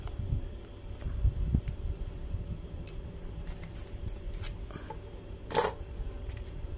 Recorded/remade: remade